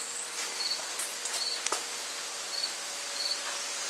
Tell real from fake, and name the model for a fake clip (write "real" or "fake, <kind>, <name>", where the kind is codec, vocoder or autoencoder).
real